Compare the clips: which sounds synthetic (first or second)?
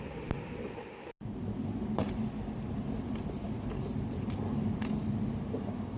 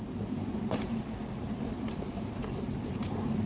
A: second